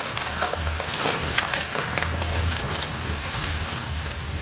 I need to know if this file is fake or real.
fake